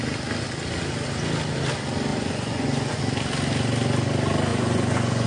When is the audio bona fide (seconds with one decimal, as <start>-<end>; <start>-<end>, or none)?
0.0-2.1; 3.0-4.5

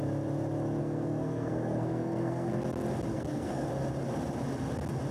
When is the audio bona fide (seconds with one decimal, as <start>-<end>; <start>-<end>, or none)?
0.0-0.8; 2.5-3.1; 3.7-5.1

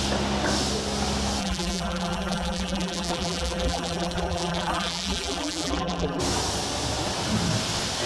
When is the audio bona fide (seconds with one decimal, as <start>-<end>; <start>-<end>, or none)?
0.0-1.4; 6.2-8.1

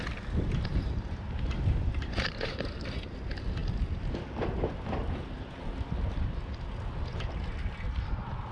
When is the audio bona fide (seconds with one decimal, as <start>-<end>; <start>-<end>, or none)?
0.0-0.7; 2.9-8.5

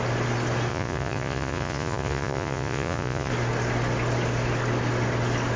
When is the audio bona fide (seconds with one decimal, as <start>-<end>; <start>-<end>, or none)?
0.0-0.7; 3.3-5.6